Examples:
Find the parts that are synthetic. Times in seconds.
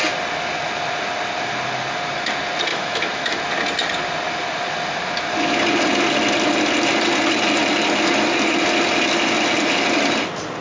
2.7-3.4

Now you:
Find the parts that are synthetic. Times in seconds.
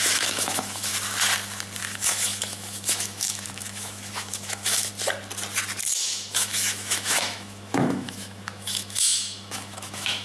0.0-0.9; 1.8-4.9; 5.9-10.2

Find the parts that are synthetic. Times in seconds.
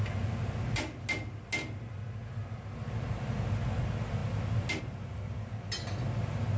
none